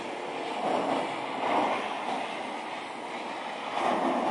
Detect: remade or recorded recorded